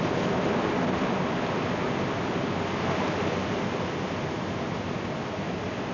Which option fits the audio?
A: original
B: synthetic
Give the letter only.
A